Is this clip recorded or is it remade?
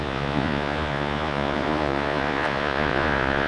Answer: remade